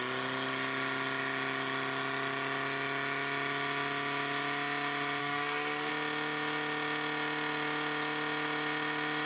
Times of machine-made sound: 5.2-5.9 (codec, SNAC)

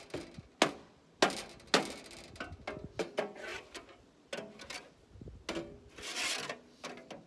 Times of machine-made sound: none

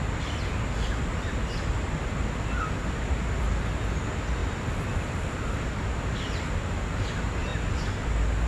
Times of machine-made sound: 4.4-5.0 (vocoder, BigVGAN v2)